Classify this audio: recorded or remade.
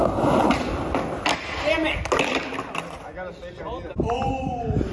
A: recorded